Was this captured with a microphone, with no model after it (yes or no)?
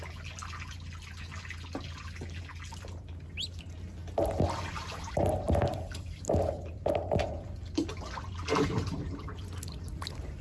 yes